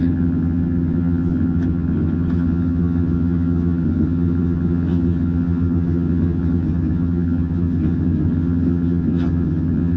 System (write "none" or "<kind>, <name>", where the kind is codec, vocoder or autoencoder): vocoder, HiFi-GAN